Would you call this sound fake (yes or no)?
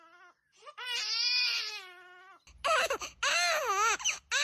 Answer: no